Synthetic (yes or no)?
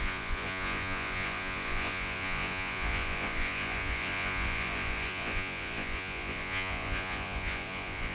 yes